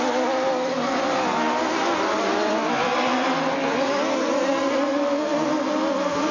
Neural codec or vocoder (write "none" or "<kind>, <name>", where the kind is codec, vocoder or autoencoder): none